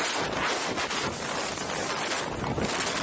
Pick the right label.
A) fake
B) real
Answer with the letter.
B